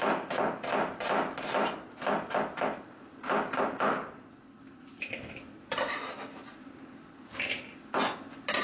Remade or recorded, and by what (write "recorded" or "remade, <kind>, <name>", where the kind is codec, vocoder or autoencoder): recorded